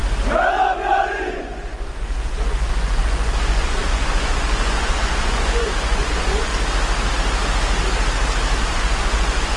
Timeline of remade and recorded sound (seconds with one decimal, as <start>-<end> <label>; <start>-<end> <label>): 0.0-0.9 recorded; 0.9-6.5 remade; 6.5-8.6 recorded; 8.6-9.6 remade